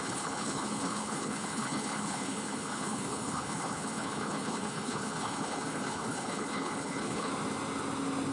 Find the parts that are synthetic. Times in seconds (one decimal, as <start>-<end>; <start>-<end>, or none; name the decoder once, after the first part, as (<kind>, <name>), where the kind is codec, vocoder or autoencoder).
0.0-7.3 (codec, HILCodec)